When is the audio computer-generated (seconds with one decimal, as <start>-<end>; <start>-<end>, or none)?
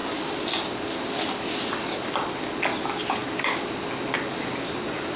none